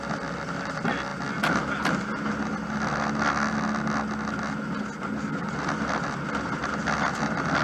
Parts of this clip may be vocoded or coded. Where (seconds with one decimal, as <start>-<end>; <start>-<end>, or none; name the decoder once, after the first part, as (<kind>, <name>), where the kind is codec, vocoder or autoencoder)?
none